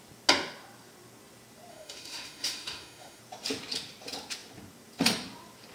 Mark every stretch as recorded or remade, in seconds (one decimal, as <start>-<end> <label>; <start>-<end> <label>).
0.0-1.7 recorded; 1.7-3.2 remade; 3.2-5.7 recorded